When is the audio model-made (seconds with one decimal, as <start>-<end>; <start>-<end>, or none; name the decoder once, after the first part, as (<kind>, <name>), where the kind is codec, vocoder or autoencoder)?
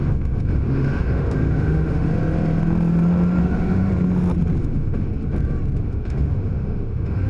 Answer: 0.0-2.1 (autoencoder, DAC-VAE); 3.4-3.9; 4.6-5.1; 5.8-7.3